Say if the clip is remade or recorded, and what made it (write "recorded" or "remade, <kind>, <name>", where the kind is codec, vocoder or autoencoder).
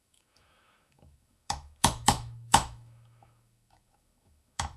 remade, autoencoder, DAC-VAE